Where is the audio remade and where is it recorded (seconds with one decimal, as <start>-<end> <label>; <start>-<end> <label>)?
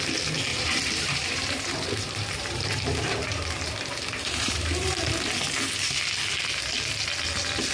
0.0-0.5 recorded; 0.5-5.1 remade; 5.1-7.7 recorded